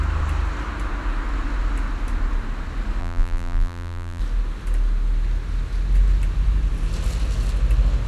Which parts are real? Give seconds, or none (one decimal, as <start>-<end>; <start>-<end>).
0.0-3.0; 4.2-8.1